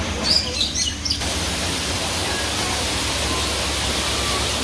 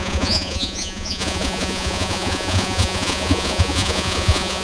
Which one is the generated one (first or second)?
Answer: second